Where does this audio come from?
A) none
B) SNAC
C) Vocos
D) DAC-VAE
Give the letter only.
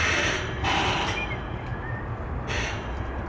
A